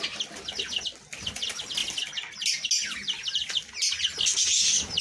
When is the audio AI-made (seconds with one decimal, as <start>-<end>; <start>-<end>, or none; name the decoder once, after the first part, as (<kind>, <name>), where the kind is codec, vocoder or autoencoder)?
none